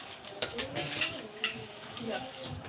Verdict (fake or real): fake